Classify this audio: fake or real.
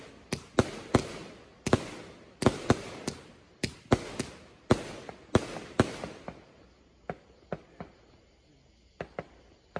real